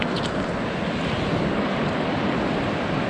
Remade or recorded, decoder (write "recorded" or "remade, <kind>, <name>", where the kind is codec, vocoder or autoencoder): recorded